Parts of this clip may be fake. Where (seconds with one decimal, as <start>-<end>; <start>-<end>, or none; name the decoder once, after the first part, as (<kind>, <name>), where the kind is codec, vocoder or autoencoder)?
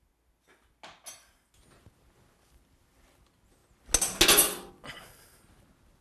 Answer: none